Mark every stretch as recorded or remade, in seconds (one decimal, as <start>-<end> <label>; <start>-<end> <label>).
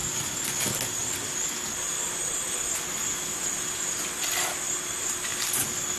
0.0-6.0 recorded